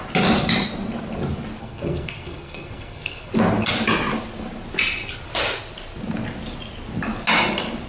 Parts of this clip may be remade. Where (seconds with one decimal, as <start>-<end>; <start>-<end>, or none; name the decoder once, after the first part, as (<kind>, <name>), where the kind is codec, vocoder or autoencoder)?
1.6-3.3 (codec, SNAC)